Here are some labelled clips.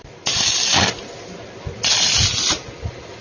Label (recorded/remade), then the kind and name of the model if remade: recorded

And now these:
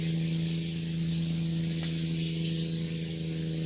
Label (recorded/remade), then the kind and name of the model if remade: recorded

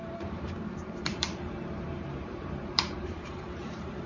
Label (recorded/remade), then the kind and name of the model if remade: remade, vocoder, BigVGAN v2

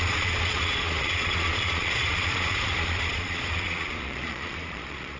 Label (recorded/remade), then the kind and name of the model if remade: remade, vocoder, Vocos